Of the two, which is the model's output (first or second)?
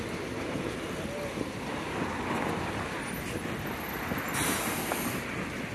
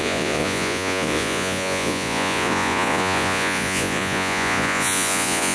second